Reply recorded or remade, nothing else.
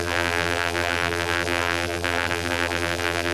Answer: remade